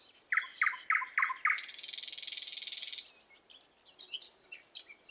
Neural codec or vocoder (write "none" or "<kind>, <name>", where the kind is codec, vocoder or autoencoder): none